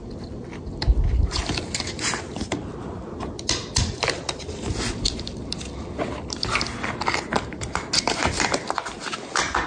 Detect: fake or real real